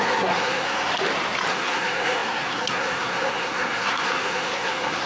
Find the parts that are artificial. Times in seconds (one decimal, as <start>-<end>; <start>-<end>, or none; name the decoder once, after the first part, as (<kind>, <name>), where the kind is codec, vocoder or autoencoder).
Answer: 0.0-0.9 (codec, SNAC); 1.5-5.1